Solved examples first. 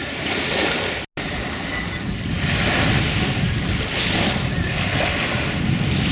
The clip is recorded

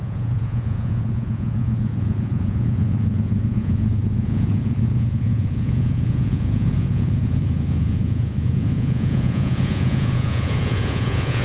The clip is remade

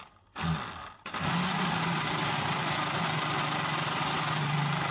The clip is recorded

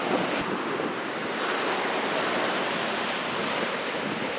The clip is recorded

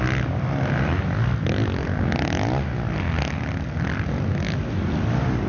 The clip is recorded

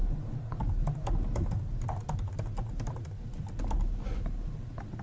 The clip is recorded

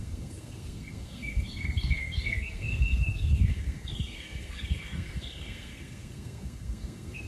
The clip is remade